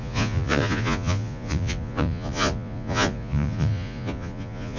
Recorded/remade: remade